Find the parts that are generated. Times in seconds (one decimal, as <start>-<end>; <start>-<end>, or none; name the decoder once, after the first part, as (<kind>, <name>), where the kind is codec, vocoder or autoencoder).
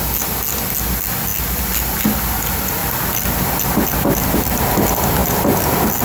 2.8-4.3 (vocoder, BigVGAN v2)